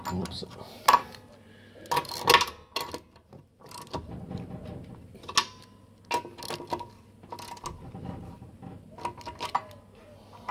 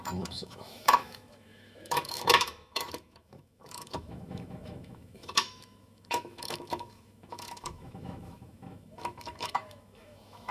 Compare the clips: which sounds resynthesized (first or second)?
second